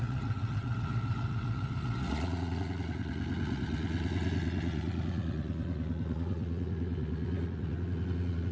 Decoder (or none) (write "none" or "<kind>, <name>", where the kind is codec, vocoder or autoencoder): vocoder, Vocos